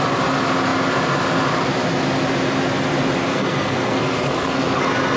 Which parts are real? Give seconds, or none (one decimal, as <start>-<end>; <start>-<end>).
0.0-3.3; 4.8-5.2